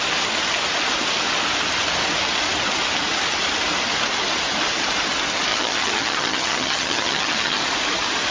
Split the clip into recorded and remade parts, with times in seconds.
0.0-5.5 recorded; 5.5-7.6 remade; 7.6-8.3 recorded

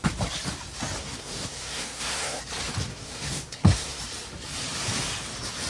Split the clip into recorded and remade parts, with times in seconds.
0.0-1.0 recorded; 1.0-2.4 remade; 2.4-2.9 recorded; 2.9-4.0 remade; 4.0-5.7 recorded

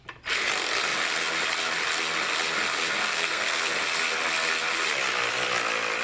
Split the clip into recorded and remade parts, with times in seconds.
0.0-3.0 recorded; 3.0-3.7 remade; 3.7-6.0 recorded

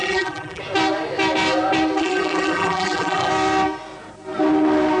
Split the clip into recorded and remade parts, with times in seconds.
0.0-0.6 remade; 0.6-2.0 recorded; 2.0-3.3 remade; 3.3-5.0 recorded

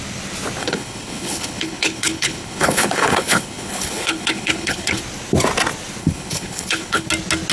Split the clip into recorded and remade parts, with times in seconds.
0.0-0.6 recorded; 0.6-5.0 remade; 5.0-6.0 recorded; 6.0-7.1 remade; 7.1-7.5 recorded

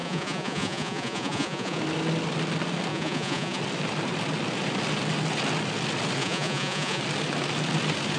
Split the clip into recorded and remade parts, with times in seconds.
0.0-1.8 remade; 1.8-2.9 recorded; 2.9-3.6 remade; 3.6-6.2 recorded; 6.2-7.0 remade; 7.0-8.2 recorded

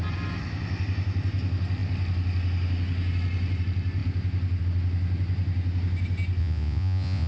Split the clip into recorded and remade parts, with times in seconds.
0.0-6.4 recorded; 6.4-7.3 remade